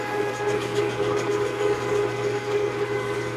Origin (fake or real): fake